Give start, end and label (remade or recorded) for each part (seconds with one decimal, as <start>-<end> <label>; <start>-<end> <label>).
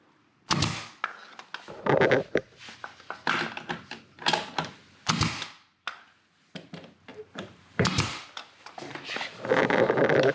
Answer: 0.0-7.1 recorded; 7.1-9.0 remade; 9.0-10.3 recorded